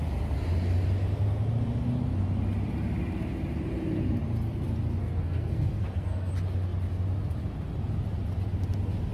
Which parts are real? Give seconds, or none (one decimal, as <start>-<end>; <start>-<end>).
0.0-5.0; 6.3-9.1